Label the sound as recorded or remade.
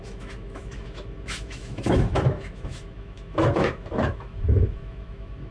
remade